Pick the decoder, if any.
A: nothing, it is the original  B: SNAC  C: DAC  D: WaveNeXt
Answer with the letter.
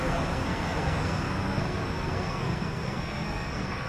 B